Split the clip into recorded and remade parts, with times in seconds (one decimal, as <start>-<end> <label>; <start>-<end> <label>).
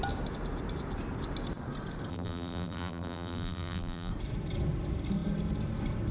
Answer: 0.0-2.1 recorded; 2.1-4.1 remade; 4.1-6.1 recorded